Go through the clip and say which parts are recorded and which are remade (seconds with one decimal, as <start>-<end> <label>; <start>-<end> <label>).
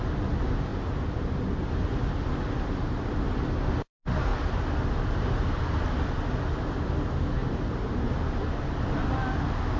0.0-7.4 recorded; 7.4-8.2 remade; 8.2-9.8 recorded